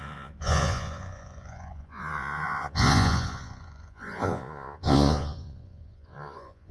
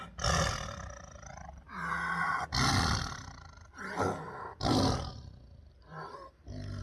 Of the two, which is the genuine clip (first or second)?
second